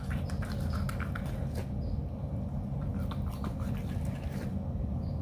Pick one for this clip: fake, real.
real